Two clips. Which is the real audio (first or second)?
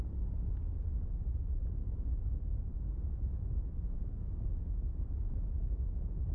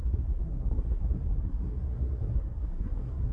first